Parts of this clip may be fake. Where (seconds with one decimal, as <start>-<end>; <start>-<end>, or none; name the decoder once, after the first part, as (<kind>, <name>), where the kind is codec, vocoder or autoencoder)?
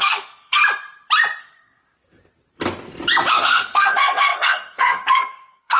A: 0.0-0.6 (codec, SNAC); 1.4-1.8; 3.3-5.8